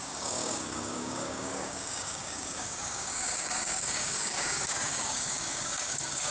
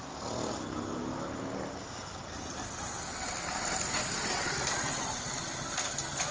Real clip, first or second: second